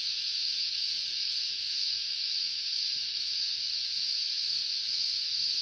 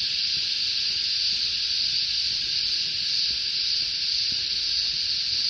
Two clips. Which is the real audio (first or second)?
second